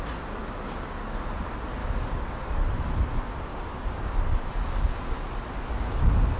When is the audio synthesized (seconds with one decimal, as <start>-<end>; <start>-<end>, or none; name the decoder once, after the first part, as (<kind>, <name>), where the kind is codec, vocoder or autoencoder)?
0.4-1.0 (codec, DAC); 1.8-2.4; 3.5-4.2